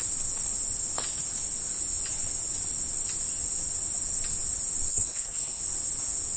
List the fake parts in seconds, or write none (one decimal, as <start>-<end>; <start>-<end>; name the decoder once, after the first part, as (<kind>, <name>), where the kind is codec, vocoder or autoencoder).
4.9-5.6 (codec, SNAC)